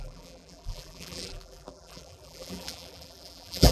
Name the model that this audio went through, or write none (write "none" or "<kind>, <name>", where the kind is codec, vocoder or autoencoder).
vocoder, BigVGAN v2